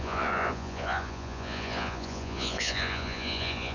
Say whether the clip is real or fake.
fake